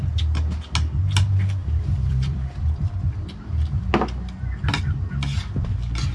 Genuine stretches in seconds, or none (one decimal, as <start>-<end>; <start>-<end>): 0.0-1.6; 3.9-6.1